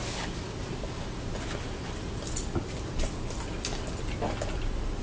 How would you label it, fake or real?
real